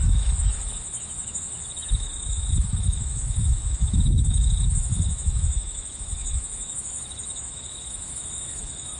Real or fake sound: fake